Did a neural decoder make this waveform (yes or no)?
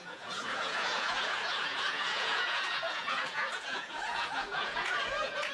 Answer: yes